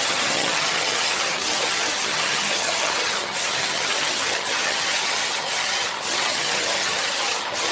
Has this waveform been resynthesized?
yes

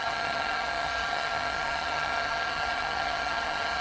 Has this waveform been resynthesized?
yes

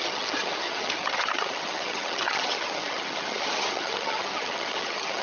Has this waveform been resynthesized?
yes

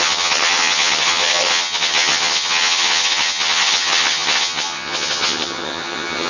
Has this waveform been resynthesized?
yes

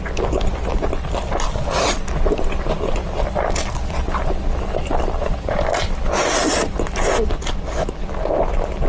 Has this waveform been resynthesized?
no